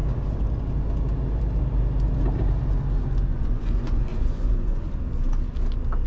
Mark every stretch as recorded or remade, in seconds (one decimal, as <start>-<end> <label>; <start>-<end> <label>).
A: 0.0-3.3 recorded; 3.3-4.9 remade; 4.9-6.1 recorded